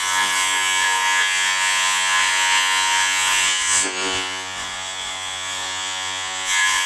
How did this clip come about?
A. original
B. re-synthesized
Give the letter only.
B